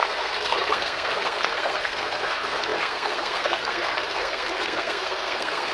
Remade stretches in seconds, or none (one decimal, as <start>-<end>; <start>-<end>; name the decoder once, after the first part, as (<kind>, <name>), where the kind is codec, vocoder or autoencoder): 0.0-5.7 (codec, SNAC)